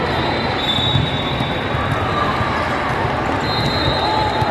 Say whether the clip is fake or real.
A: real